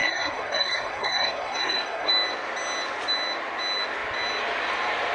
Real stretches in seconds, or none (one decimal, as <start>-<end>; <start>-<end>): 2.1-5.1